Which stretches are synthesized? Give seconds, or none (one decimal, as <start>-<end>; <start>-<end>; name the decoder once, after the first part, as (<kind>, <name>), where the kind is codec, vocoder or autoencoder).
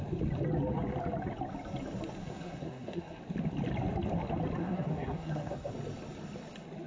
2.2-3.2 (codec, SNAC); 4.6-5.7